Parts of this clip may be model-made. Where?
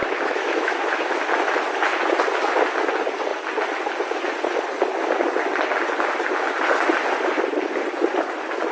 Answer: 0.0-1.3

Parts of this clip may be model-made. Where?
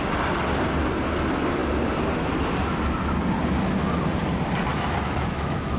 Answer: 4.7-5.8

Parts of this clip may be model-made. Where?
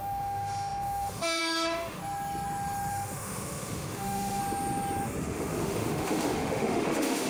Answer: 0.0-2.0; 2.9-4.4; 5.2-7.3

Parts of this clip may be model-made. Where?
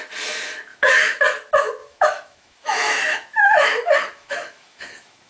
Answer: 0.7-1.2; 1.8-5.3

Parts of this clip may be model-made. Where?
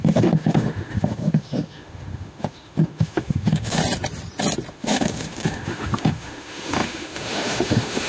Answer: 0.0-3.8; 4.7-8.1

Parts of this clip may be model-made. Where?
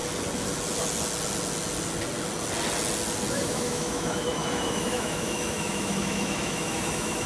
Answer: 3.3-7.3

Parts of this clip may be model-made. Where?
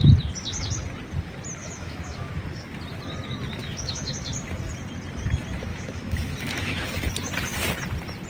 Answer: 1.6-2.4; 3.6-4.1; 5.7-7.1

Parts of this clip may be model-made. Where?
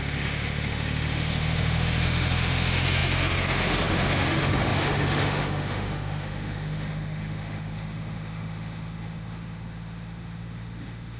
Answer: 0.0-11.2